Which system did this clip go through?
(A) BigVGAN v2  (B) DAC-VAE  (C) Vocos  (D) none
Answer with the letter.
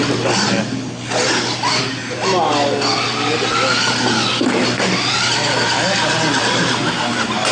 D